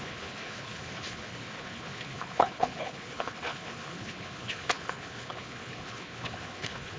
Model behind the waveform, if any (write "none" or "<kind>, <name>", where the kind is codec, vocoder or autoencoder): codec, HILCodec